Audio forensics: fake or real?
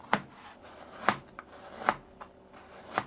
real